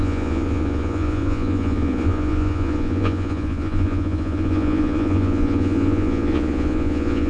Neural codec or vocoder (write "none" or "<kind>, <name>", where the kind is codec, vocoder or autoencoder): vocoder, Vocos